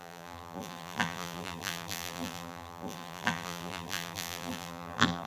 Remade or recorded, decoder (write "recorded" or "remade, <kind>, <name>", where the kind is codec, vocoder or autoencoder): remade, vocoder, BigVGAN v2